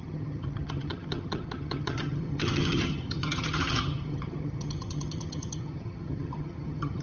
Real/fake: fake